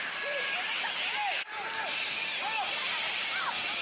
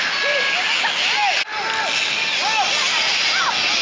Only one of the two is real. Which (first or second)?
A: second